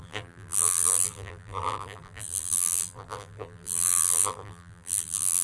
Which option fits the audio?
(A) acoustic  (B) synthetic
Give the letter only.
B